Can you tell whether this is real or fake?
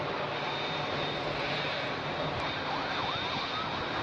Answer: real